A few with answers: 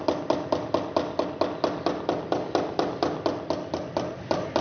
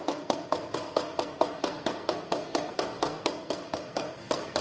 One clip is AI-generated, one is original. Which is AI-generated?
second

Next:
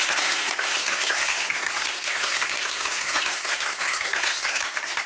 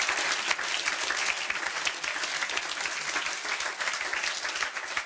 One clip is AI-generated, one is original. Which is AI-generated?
first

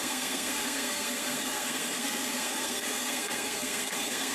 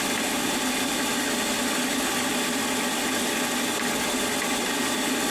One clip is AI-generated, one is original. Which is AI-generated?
first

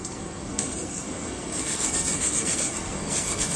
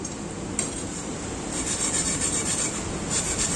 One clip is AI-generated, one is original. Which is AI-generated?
first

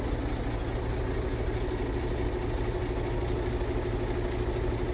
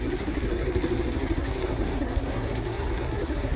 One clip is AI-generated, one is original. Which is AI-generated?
second